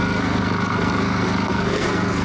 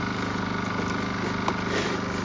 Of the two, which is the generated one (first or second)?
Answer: first